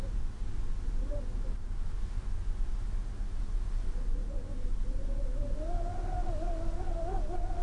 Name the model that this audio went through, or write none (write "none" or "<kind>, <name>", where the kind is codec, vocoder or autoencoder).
none